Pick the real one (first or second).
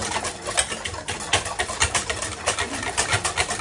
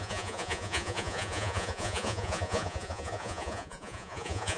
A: first